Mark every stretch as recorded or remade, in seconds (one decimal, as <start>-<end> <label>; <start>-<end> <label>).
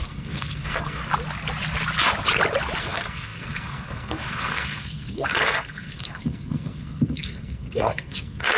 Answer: 0.0-1.0 remade; 1.0-2.8 recorded; 2.8-8.6 remade